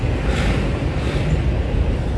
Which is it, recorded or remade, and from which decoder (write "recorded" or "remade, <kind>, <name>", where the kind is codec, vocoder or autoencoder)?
recorded